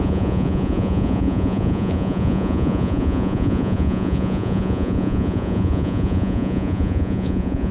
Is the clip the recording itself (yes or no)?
no